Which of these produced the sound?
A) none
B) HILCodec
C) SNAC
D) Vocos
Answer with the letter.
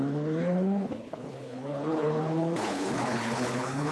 B